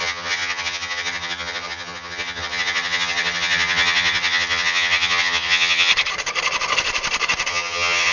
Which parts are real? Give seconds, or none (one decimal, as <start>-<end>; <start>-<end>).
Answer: 5.9-7.5